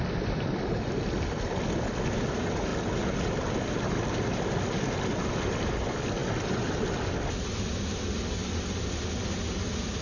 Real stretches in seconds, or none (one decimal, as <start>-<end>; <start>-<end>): 0.0-10.0